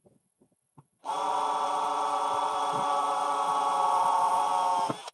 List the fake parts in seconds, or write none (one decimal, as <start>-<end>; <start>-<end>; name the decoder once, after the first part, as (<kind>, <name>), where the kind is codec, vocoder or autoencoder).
0.0-4.5 (vocoder, WaveNeXt)